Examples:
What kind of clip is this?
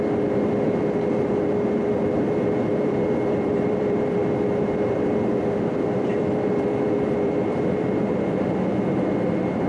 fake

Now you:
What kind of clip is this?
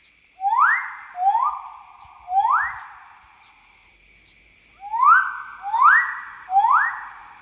real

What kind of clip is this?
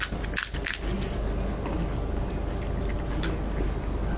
real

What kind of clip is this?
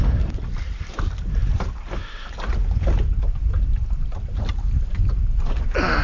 real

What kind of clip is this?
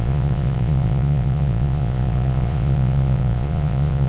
fake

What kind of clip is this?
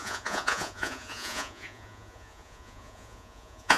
fake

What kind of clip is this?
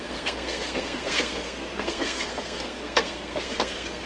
fake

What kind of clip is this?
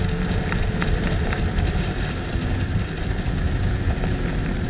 real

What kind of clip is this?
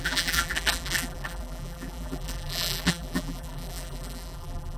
fake